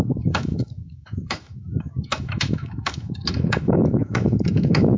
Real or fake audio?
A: fake